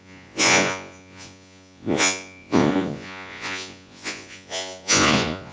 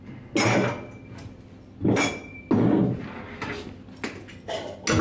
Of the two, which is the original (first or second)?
second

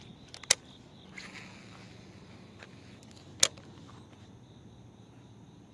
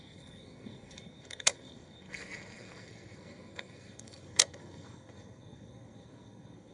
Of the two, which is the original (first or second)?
first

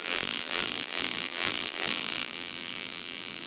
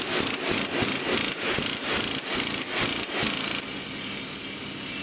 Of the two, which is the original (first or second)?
second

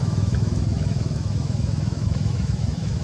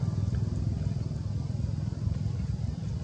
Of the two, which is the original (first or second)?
second